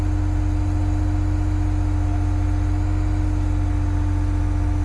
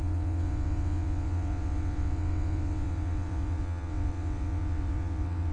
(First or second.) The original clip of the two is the first